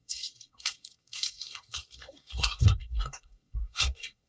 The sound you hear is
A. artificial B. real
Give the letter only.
A